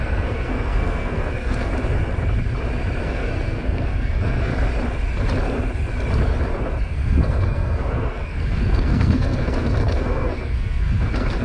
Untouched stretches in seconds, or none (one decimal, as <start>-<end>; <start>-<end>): 1.7-3.0; 4.5-6.7